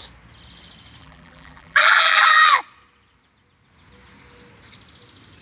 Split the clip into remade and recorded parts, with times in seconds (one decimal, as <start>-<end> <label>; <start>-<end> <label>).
0.0-1.0 recorded; 1.0-2.6 remade; 2.6-5.4 recorded